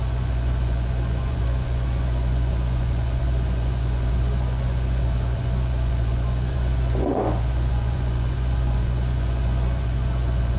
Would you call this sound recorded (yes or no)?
no